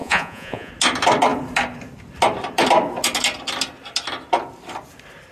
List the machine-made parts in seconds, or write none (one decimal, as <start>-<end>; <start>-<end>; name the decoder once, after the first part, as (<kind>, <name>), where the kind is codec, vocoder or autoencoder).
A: 0.0-0.7 (vocoder, Vocos)